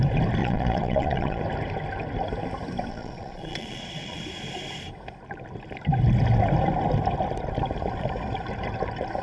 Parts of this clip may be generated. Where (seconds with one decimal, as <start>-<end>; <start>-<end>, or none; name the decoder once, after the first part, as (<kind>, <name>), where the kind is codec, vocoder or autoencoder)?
0.4-1.4 (vocoder, Vocos); 2.9-4.2

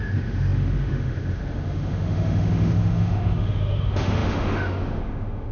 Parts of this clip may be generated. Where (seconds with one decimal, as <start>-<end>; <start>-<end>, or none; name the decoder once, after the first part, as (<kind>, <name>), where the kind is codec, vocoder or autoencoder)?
0.0-5.5 (autoencoder, DAC-VAE)

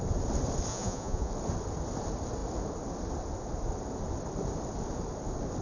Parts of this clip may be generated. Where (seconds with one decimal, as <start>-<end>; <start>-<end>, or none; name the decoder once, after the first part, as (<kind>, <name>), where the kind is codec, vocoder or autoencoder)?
0.7-1.3 (vocoder, Vocos)

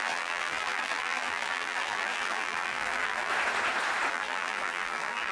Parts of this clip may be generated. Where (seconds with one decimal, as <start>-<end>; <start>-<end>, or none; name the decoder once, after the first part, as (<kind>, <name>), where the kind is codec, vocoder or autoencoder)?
0.0-3.3 (vocoder, BigVGAN v2); 4.1-5.3

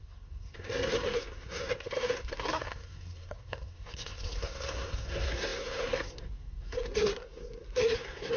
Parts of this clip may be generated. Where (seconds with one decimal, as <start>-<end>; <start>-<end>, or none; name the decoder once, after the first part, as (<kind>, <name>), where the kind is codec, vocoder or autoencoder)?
0.0-8.4 (codec, SNAC)

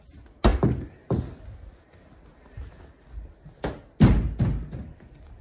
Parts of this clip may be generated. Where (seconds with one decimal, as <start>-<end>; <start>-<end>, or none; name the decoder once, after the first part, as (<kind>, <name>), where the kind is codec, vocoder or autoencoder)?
none

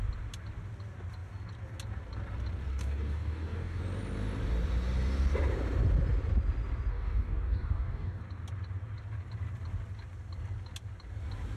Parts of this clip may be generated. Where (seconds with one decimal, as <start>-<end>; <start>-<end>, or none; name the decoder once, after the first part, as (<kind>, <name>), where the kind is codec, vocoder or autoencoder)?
2.7-3.8 (codec, DAC); 6.9-8.2

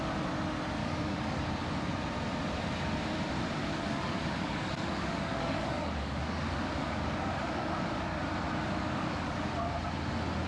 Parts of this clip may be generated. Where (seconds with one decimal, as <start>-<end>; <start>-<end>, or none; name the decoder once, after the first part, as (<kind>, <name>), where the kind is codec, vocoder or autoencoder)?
0.8-1.4 (codec, DAC); 3.6-8.2; 8.6-9.5